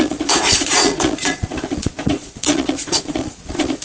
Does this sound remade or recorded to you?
remade